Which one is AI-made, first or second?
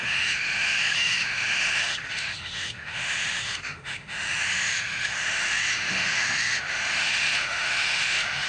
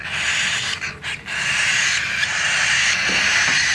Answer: first